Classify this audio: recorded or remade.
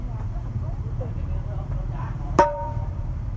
remade